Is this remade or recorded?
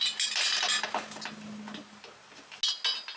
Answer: recorded